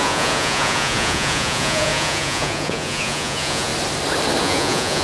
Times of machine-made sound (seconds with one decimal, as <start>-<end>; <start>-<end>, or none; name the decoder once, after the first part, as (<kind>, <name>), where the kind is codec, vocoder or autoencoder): 0.0-3.7 (vocoder, Vocos); 4.4-5.0